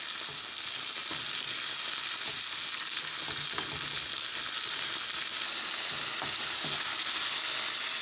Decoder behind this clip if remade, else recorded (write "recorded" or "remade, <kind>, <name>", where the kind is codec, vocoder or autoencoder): recorded